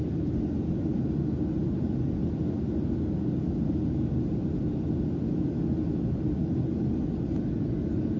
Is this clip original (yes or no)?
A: yes